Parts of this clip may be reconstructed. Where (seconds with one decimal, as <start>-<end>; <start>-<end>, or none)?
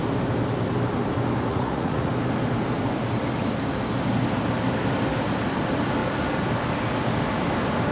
1.5-2.1